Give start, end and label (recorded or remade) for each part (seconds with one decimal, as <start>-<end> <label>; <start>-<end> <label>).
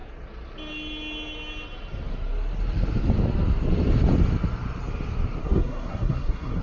0.0-5.4 recorded; 5.4-6.6 remade